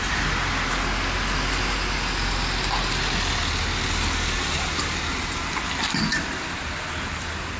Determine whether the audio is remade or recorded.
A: recorded